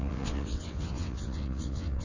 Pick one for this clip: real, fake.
fake